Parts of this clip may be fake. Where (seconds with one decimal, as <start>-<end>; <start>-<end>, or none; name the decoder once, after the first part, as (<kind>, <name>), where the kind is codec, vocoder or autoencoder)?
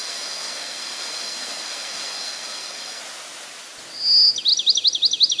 0.0-3.0 (codec, SNAC)